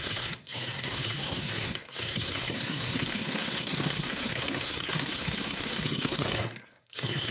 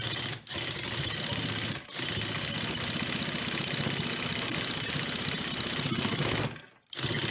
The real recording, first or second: second